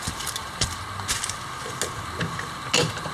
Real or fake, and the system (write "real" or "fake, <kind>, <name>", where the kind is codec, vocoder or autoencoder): real